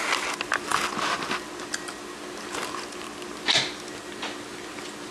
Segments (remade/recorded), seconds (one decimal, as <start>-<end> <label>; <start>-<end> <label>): 0.0-5.1 recorded